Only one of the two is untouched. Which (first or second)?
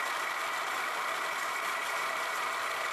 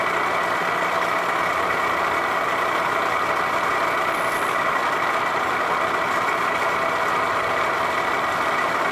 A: second